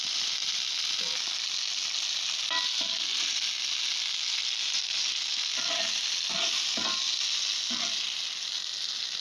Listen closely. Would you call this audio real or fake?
real